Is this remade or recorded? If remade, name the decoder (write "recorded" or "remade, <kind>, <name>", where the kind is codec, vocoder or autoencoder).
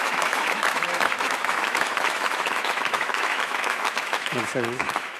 remade, autoencoder, DAC-VAE